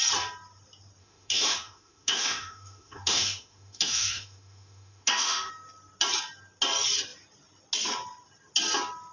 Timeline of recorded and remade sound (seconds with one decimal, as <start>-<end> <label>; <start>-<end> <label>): 0.0-1.0 recorded; 1.0-5.5 remade; 5.5-9.1 recorded